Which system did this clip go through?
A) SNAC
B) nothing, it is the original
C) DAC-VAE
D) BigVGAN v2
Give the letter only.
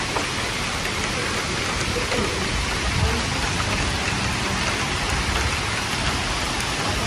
B